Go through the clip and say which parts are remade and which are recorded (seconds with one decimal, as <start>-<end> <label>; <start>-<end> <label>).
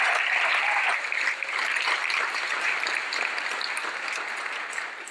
0.0-0.9 recorded; 0.9-3.5 remade; 3.5-5.1 recorded